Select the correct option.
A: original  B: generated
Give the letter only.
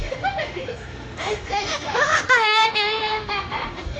B